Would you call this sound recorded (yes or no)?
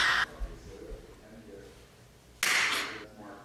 yes